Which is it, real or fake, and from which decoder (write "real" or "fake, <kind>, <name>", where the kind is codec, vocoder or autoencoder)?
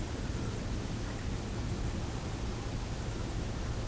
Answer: real